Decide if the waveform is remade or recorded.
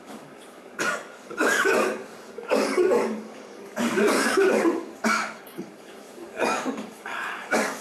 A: remade